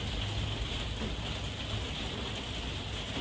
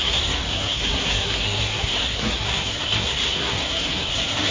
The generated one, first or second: second